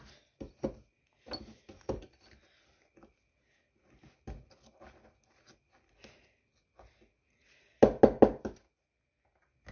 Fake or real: real